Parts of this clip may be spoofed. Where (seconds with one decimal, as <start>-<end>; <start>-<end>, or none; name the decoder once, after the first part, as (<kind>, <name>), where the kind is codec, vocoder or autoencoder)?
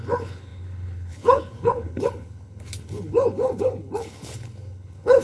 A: 0.0-5.2 (codec, HILCodec)